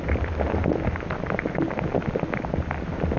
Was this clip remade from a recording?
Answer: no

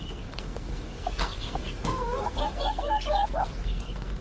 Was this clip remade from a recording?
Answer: yes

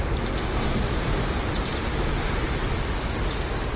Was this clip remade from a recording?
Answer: no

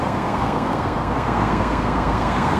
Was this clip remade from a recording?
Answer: yes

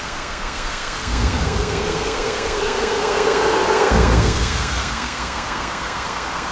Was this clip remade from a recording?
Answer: yes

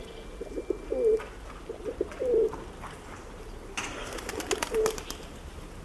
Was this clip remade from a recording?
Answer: no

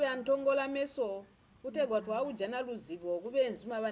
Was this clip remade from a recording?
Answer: no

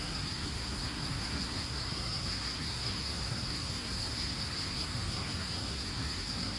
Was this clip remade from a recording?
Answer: yes